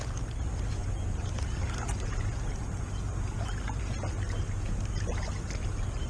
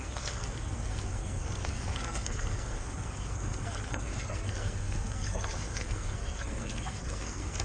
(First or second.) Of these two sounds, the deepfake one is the second